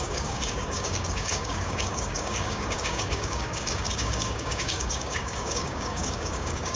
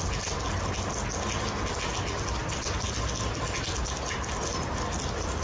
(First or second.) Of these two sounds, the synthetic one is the first